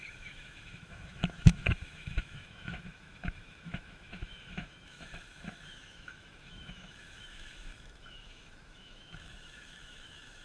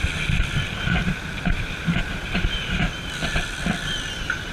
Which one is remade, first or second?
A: first